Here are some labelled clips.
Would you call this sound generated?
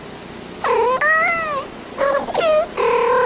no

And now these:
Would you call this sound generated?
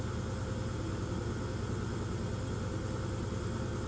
no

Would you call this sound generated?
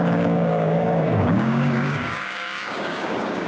yes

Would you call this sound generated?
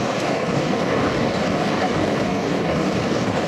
yes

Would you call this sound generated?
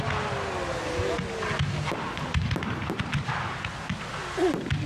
no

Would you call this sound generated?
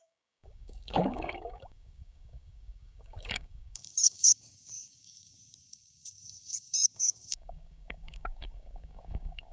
yes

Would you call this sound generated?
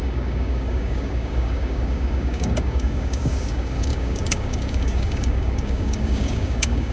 yes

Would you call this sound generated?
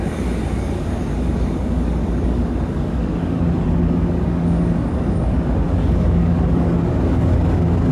yes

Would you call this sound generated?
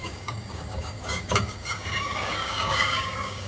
yes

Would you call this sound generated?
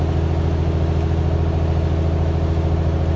no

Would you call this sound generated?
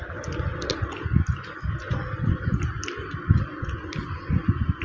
no